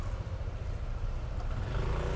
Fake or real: real